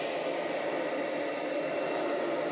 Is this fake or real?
real